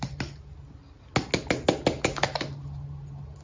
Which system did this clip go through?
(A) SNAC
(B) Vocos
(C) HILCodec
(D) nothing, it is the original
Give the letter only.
D